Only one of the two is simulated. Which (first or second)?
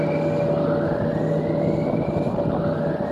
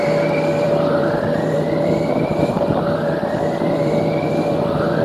second